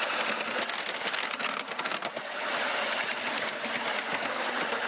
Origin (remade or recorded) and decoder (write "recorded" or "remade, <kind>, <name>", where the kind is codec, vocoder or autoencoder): recorded